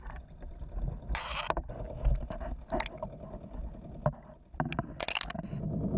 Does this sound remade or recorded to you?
recorded